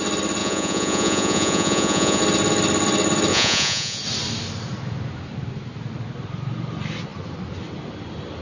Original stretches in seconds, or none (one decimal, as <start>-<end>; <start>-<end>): 0.0-0.4; 2.2-3.3; 4.0-8.4